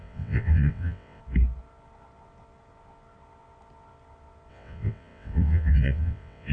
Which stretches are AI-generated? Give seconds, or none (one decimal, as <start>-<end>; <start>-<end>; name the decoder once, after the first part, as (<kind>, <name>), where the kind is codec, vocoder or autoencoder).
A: 0.0-1.2 (vocoder, WaveNeXt); 4.5-6.5